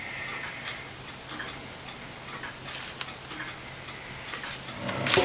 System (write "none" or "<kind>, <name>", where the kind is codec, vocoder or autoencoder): none